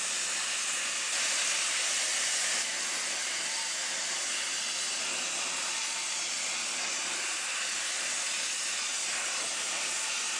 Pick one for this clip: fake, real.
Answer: real